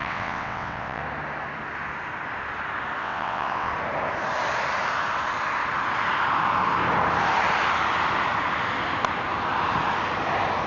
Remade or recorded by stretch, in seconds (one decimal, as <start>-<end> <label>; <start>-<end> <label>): 0.0-1.0 remade; 1.0-3.0 recorded; 3.0-3.7 remade; 3.7-10.7 recorded